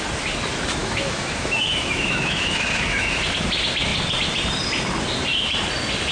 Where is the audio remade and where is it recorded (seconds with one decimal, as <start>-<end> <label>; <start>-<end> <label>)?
0.0-0.8 recorded; 0.8-3.2 remade; 3.2-6.1 recorded